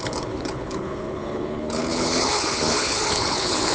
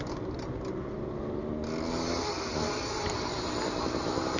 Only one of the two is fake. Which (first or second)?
first